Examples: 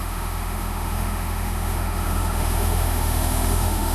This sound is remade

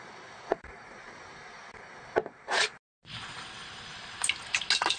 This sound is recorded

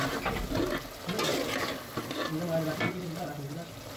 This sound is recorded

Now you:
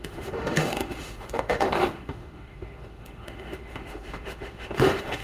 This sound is remade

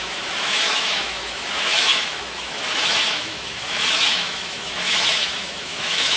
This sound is remade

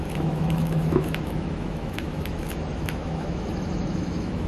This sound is remade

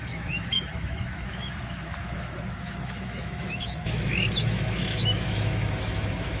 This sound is remade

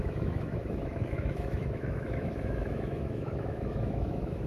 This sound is remade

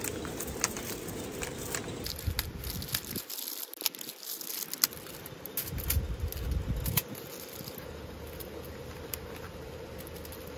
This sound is recorded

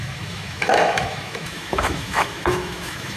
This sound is remade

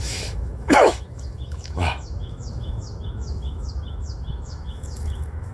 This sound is remade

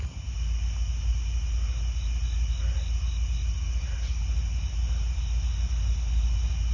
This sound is recorded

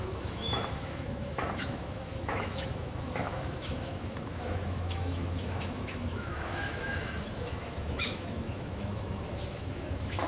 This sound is remade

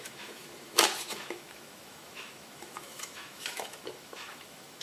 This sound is remade